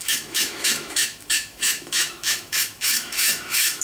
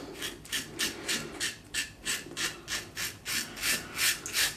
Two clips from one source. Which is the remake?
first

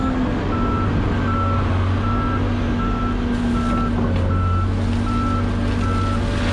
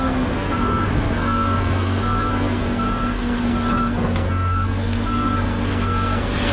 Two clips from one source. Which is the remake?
second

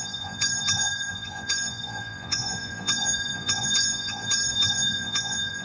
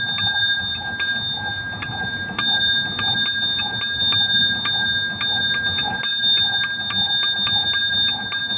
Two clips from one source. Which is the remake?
first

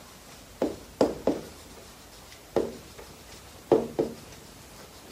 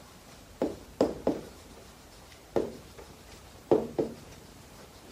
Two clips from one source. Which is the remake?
second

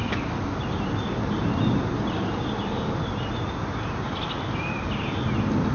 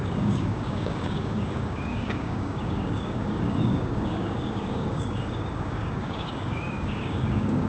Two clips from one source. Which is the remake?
second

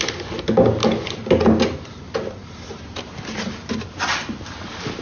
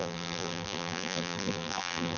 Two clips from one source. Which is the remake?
second